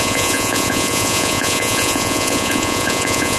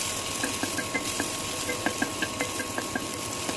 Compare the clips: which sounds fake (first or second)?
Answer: first